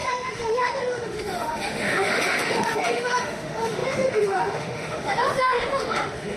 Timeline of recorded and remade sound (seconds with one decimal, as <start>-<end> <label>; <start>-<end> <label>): 0.0-6.4 remade